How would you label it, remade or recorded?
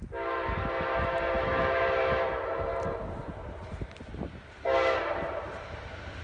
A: recorded